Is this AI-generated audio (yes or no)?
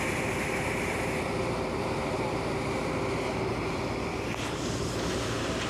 yes